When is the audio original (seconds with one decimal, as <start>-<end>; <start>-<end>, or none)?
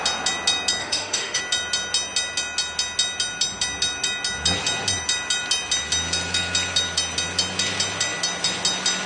0.0-0.8; 1.4-9.1